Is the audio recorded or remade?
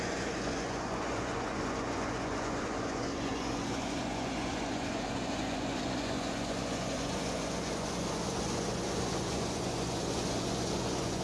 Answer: remade